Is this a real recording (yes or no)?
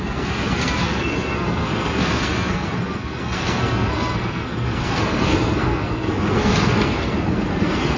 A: no